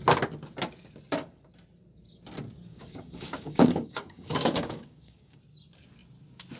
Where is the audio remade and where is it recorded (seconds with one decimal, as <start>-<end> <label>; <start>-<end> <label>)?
0.0-2.7 recorded; 2.7-5.4 remade; 5.4-6.6 recorded